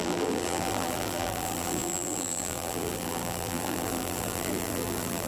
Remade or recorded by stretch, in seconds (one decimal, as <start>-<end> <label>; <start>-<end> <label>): 0.0-5.3 remade